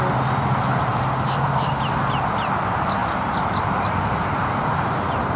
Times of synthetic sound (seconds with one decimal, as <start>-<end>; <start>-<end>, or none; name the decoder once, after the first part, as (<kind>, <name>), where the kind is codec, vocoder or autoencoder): 0.9-1.7 (vocoder, BigVGAN v2); 3.0-4.7